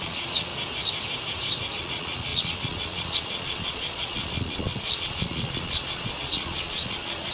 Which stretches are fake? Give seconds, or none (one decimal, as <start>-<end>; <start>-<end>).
0.0-0.5; 1.8-7.3